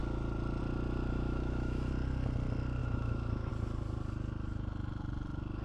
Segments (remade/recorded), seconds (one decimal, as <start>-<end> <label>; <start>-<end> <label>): 0.0-1.1 recorded; 1.1-1.9 remade; 1.9-2.8 recorded; 2.8-3.5 remade; 3.5-5.6 recorded